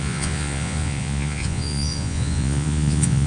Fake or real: fake